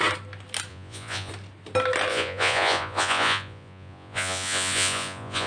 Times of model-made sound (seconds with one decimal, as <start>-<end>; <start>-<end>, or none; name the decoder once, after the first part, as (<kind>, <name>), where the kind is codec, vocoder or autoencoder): 0.7-1.3 (vocoder, Vocos); 2.1-5.5